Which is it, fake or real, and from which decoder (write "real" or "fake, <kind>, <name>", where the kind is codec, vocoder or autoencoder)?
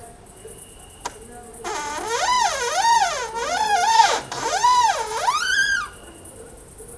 real